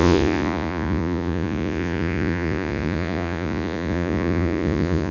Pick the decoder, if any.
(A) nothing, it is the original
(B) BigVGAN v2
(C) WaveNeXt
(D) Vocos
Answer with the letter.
D